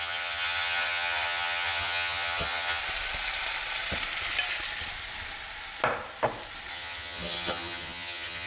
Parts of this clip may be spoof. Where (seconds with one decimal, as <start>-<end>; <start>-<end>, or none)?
0.0-2.8; 6.7-8.5